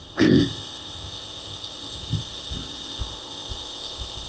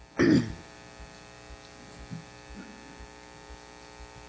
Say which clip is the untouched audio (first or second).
second